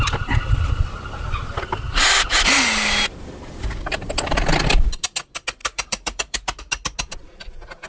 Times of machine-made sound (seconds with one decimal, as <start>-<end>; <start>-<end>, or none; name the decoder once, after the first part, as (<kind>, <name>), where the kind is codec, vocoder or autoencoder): 5.6-6.6 (vocoder, BigVGAN v2)